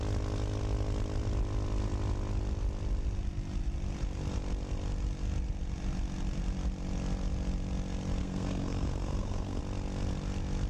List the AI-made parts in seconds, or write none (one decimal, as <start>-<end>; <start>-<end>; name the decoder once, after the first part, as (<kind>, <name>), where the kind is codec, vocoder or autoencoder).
8.2-9.6 (codec, SNAC)